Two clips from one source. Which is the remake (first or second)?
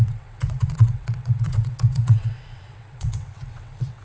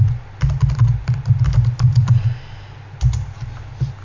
first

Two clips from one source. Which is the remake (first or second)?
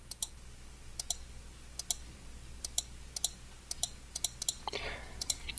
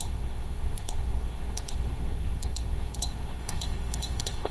second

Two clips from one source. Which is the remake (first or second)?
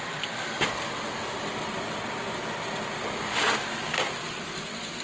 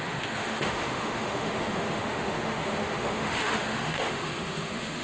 second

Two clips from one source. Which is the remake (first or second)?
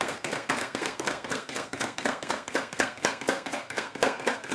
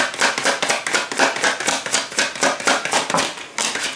first